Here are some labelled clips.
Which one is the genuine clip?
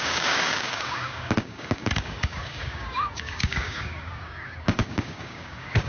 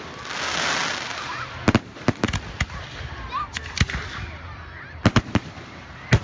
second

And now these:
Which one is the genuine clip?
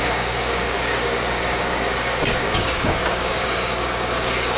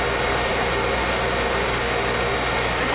second